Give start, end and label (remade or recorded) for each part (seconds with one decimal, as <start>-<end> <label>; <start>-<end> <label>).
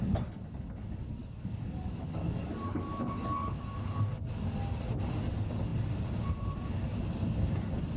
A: 0.0-1.2 recorded; 1.2-3.6 remade; 3.6-8.0 recorded